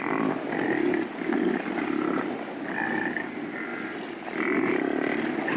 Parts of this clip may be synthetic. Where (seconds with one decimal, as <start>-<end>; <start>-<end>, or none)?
none